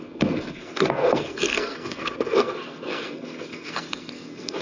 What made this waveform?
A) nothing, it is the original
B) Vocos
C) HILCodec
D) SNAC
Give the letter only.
D